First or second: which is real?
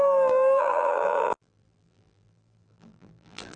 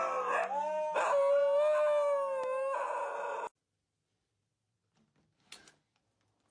second